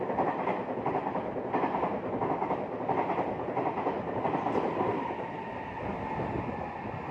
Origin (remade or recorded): recorded